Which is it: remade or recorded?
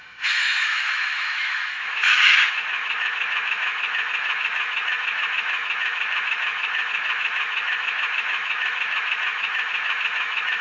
remade